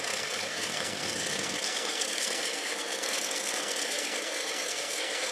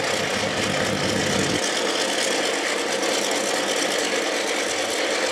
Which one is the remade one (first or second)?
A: first